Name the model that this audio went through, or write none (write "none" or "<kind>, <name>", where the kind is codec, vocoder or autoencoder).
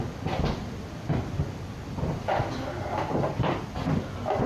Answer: none